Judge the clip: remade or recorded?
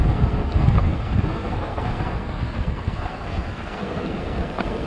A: remade